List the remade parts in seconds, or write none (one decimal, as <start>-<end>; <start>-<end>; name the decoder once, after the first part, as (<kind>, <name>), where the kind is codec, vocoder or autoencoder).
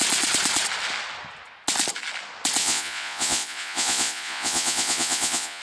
2.6-5.6 (vocoder, Vocos)